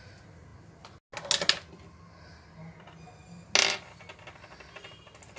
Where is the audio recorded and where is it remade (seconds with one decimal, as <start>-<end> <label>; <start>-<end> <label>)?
0.0-5.4 recorded